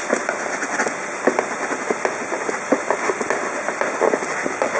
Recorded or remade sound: recorded